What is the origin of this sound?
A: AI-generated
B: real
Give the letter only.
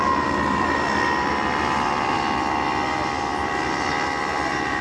A